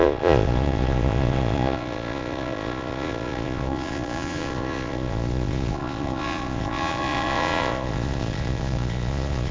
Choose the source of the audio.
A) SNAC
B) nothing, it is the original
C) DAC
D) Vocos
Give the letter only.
D